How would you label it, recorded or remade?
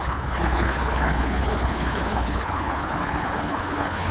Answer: remade